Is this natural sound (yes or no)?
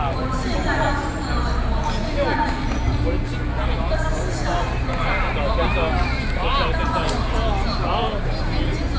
yes